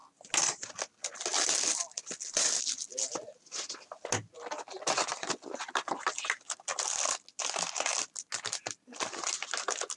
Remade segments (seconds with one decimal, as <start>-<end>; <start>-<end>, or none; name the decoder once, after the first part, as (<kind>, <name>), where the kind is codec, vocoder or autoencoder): none